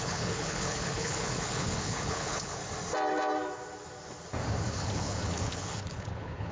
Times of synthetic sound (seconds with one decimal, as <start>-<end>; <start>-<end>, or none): 0.0-2.6; 4.6-6.5